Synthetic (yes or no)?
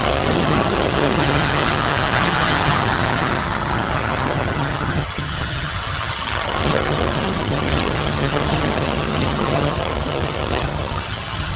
yes